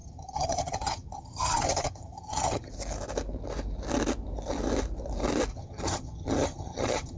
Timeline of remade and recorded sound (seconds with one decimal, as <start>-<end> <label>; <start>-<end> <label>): 0.0-2.7 remade; 2.7-5.5 recorded; 5.5-7.2 remade